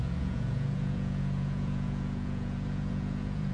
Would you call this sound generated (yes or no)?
yes